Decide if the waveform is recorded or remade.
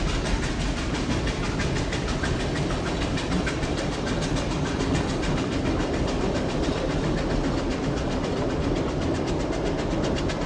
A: recorded